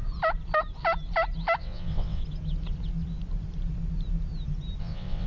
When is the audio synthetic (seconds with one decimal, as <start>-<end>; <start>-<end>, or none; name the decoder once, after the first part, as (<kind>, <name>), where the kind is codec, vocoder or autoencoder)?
1.6-2.2 (vocoder, WaveNeXt); 4.8-5.3